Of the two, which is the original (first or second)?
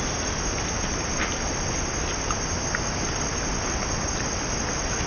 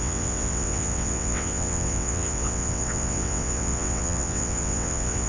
first